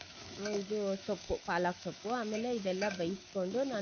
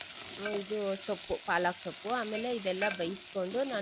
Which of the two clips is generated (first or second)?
first